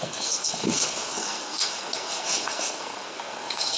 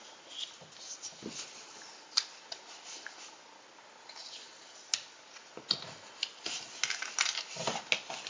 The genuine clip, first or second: second